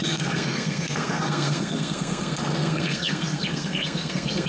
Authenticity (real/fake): fake